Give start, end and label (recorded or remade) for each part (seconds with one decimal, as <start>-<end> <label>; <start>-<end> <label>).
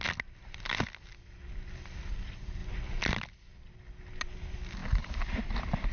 0.0-4.8 recorded; 4.8-5.5 remade; 5.5-5.9 recorded